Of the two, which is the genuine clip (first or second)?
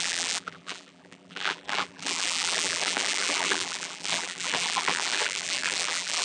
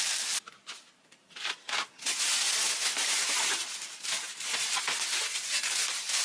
second